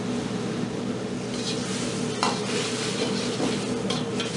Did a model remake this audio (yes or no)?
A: no